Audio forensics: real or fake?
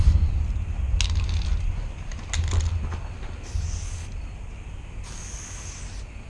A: real